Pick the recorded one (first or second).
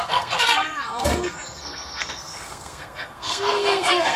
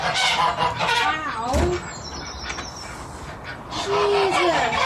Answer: second